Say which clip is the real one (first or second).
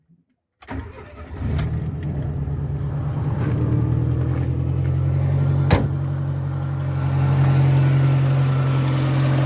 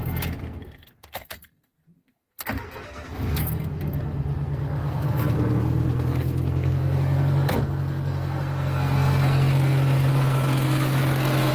first